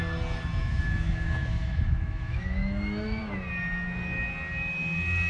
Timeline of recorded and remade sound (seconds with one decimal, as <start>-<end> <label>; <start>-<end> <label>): 0.0-0.6 recorded; 0.6-3.2 remade; 3.2-5.3 recorded